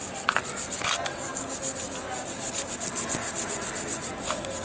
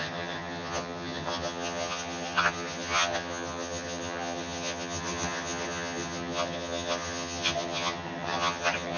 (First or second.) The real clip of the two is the first